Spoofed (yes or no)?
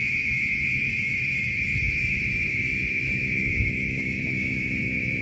yes